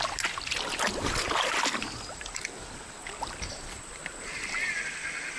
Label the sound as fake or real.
real